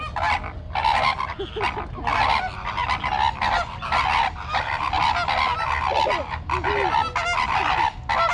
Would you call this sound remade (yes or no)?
no